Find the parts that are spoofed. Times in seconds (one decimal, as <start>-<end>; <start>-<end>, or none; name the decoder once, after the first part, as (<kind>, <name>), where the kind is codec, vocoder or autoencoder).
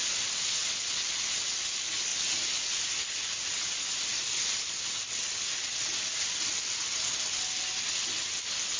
none